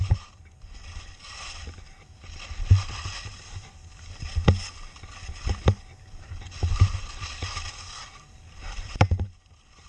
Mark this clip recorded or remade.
recorded